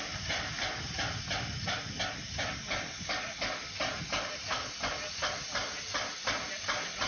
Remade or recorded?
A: recorded